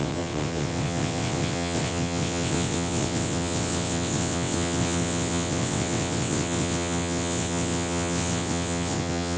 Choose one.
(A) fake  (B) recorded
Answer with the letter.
A